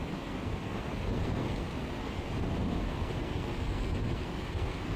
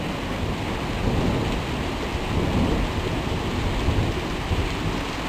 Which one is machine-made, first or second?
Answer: first